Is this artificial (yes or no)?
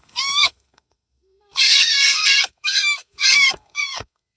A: yes